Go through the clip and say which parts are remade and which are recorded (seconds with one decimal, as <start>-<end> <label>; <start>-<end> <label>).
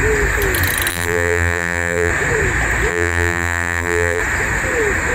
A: 0.0-0.9 recorded; 0.9-2.1 remade; 2.1-2.9 recorded; 2.9-4.2 remade; 4.2-5.1 recorded